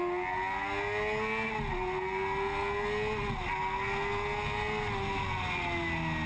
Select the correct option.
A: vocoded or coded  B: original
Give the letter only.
B